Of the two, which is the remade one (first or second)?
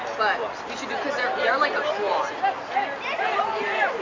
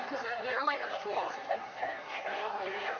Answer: second